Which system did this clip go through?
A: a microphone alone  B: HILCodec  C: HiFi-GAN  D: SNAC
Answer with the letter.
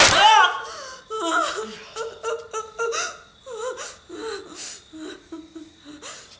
A